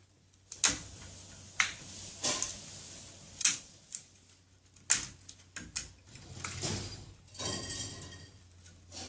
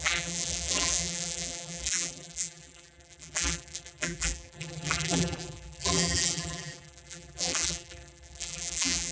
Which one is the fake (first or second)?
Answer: second